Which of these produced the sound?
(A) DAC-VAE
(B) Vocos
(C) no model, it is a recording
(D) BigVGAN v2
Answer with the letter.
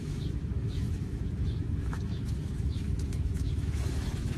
A